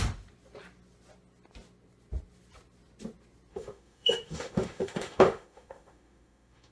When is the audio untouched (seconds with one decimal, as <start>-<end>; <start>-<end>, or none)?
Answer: 0.0-3.5